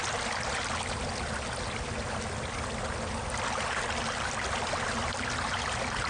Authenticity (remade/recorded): recorded